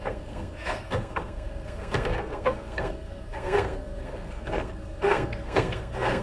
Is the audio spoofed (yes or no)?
yes